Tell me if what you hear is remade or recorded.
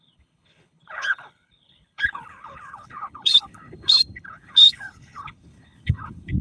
remade